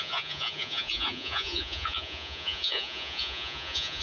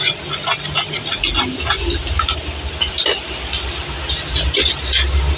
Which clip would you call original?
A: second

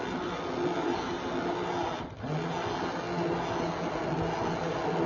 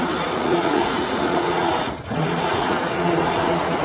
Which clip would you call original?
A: first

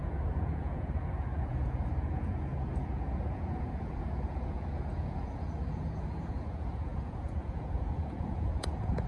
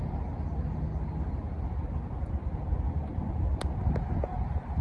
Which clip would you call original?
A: second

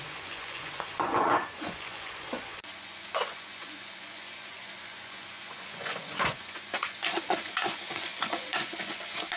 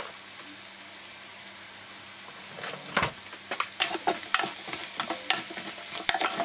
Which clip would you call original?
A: second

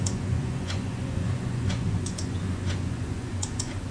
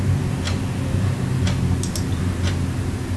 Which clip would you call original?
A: second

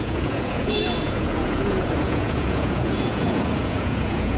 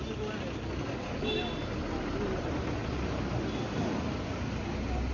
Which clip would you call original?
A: second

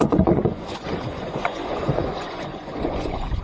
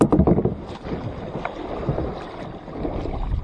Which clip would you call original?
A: second